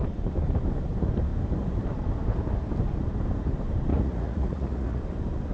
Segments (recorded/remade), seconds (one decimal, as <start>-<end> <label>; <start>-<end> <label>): 0.0-3.9 recorded; 3.9-5.0 remade; 5.0-5.5 recorded